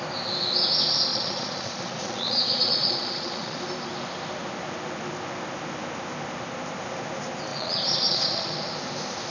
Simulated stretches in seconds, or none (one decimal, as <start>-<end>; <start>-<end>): 1.1-3.6; 7.5-8.5